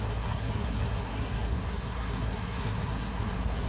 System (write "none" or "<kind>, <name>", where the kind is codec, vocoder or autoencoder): codec, SNAC